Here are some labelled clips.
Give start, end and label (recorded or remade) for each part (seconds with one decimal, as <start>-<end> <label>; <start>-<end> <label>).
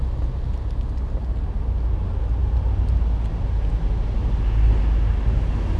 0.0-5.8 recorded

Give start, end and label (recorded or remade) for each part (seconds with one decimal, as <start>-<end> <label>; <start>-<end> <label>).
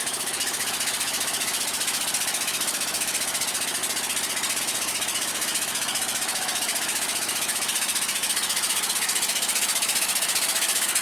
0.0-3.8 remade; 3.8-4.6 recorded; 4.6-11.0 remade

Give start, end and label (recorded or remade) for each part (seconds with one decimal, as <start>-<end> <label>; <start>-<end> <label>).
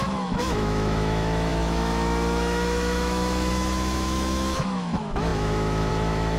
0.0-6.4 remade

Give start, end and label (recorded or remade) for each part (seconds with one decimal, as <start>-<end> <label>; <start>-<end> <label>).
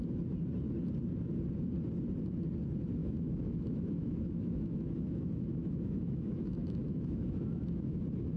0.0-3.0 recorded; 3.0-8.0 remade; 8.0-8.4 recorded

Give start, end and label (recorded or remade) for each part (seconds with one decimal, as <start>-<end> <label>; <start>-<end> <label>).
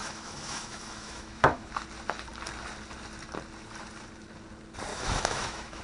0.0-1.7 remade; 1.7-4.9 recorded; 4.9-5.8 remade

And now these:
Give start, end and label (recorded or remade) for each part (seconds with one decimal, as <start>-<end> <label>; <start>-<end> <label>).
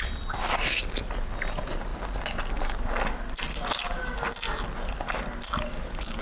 0.0-6.2 recorded